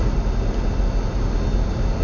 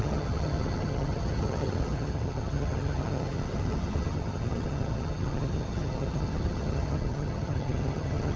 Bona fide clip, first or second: first